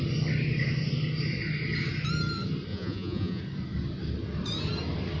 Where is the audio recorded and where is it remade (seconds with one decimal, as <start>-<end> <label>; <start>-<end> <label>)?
0.0-2.7 recorded; 2.7-3.4 remade; 3.4-5.2 recorded